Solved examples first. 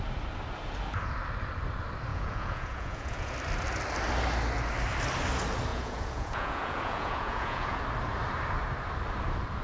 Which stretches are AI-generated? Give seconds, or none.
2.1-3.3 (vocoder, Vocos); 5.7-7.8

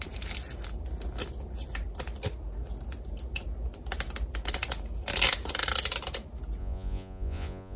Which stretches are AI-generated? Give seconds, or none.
6.6-7.8 (vocoder, Vocos)

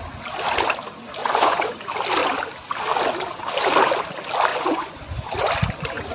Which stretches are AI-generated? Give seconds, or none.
1.2-1.7 (vocoder, Vocos); 4.5-5.1

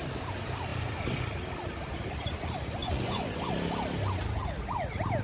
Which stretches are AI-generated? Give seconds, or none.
2.8-3.5 (vocoder, Vocos)

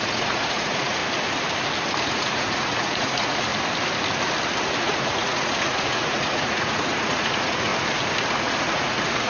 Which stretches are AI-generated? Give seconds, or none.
0.0-1.0 (vocoder, Vocos); 2.0-3.5; 4.8-7.7; 8.3-9.3

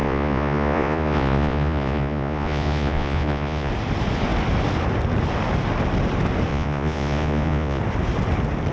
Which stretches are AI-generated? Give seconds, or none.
0.0-3.7 (vocoder, Vocos); 6.5-7.8

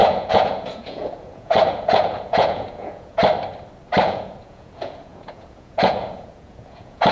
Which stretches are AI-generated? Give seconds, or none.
0.0-3.2 (vocoder, Vocos); 4.0-7.1